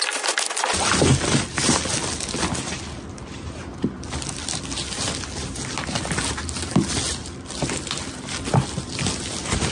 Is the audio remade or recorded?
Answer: recorded